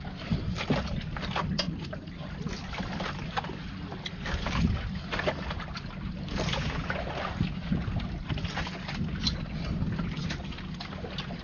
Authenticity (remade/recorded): recorded